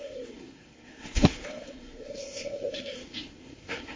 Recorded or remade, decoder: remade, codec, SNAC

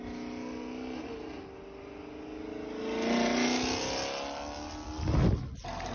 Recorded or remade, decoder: recorded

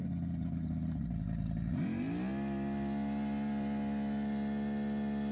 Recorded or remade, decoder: recorded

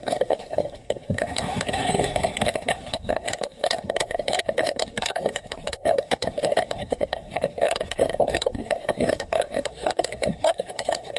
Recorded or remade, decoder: remade, codec, SNAC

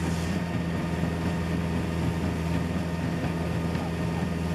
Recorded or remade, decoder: recorded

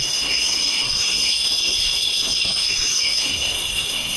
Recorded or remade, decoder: remade, codec, SNAC